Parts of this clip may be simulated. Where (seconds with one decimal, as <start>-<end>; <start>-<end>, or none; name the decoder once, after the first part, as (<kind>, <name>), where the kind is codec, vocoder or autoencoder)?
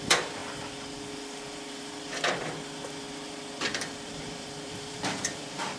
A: 0.0-0.4 (vocoder, BigVGAN v2); 3.6-5.8